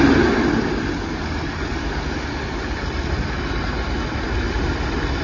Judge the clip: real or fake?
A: real